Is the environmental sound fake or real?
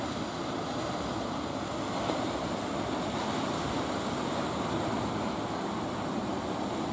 real